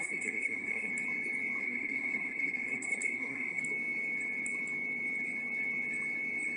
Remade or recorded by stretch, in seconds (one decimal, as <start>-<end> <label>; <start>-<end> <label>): 0.0-0.9 remade; 0.9-1.6 recorded; 1.6-3.6 remade; 3.6-6.6 recorded